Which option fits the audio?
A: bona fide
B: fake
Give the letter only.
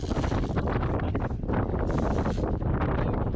A